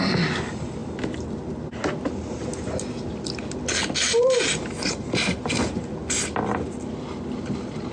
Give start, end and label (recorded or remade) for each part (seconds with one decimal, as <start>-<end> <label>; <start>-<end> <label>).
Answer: 0.0-7.9 recorded